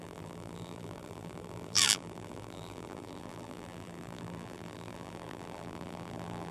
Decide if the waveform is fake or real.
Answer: fake